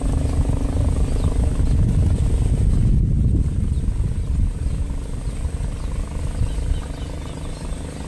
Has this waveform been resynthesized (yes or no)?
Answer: no